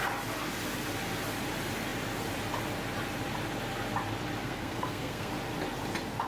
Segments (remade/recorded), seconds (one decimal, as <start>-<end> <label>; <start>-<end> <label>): 0.0-4.4 recorded; 4.4-5.3 remade; 5.3-6.3 recorded